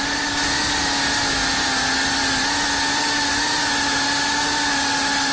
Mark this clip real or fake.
real